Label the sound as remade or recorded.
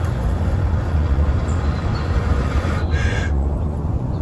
remade